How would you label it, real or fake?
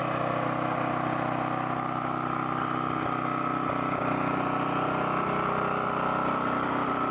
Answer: real